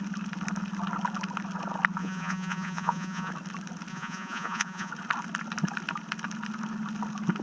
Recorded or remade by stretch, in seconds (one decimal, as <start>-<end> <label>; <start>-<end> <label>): 0.0-2.0 recorded; 2.0-3.3 remade; 3.3-3.9 recorded; 3.9-4.9 remade; 4.9-7.4 recorded